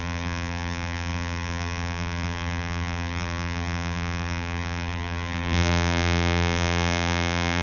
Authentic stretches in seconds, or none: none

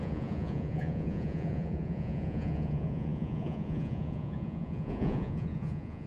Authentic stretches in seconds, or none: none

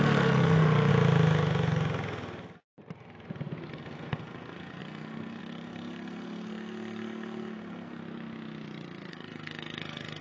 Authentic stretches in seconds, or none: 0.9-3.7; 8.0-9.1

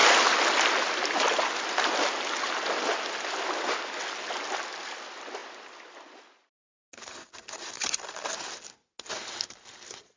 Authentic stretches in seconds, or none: 0.0-10.2

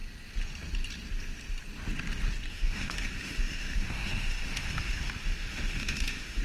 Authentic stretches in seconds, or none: 0.0-2.5

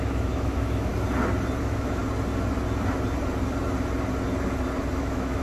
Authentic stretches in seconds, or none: 0.9-1.6; 2.0-5.0